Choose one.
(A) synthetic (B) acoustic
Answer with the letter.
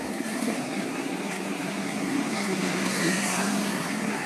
A